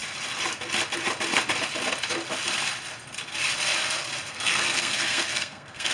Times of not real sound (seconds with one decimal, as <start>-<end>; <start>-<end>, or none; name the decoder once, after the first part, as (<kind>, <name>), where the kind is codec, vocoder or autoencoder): 4.3-5.9 (codec, SNAC)